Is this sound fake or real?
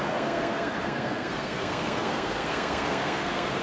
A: fake